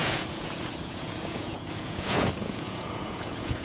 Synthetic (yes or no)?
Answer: yes